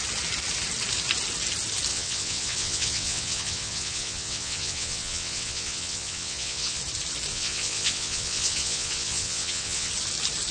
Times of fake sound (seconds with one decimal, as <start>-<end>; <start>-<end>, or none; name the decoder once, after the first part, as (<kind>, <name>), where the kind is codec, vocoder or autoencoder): 1.9-6.8 (vocoder, WaveNeXt); 7.3-9.9